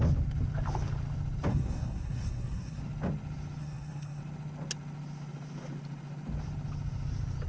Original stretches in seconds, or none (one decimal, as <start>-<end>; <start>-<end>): 0.0-1.5; 2.8-3.6; 4.2-7.5